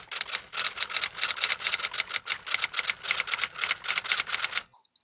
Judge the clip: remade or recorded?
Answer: recorded